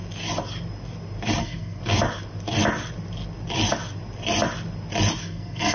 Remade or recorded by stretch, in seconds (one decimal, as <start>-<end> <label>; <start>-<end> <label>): 0.0-1.4 recorded; 1.4-1.8 remade; 1.8-5.2 recorded; 5.2-5.7 remade